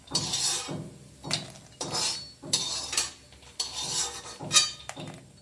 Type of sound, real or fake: real